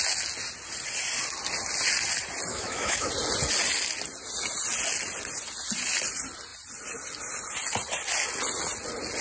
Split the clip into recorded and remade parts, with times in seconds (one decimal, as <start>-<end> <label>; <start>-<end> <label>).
0.0-2.5 recorded; 2.5-3.1 remade; 3.1-9.2 recorded